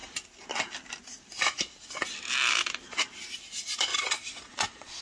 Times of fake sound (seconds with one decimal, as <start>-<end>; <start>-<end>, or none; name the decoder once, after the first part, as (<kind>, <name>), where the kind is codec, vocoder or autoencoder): 3.9-5.0 (vocoder, Vocos)